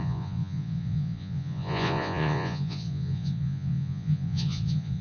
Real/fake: fake